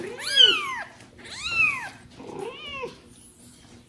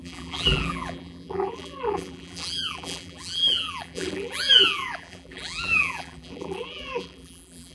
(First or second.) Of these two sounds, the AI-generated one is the second